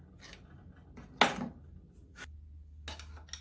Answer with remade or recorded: recorded